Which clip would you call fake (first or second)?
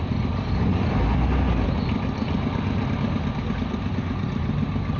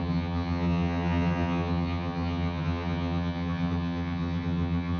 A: second